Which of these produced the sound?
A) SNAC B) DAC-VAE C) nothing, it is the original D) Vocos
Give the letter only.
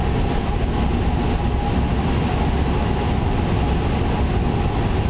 C